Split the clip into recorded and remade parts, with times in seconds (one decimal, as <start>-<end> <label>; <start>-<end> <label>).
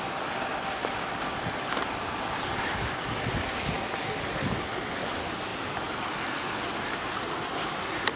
0.0-8.2 recorded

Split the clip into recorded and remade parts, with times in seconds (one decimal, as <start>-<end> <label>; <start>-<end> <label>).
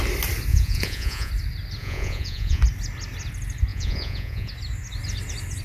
0.0-0.5 recorded; 0.5-1.3 remade; 1.3-1.8 recorded; 1.8-2.6 remade; 2.6-3.7 recorded; 3.7-4.5 remade; 4.5-5.6 recorded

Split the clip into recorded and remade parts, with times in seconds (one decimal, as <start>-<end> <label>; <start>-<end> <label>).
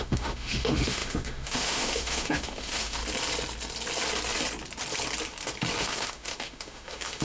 0.0-3.0 remade; 3.0-5.8 recorded; 5.8-7.2 remade